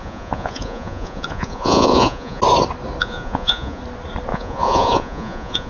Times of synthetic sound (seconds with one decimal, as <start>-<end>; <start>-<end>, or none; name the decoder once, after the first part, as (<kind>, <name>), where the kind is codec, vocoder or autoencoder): 0.0-2.4 (vocoder, Vocos); 3.0-3.8; 4.3-5.7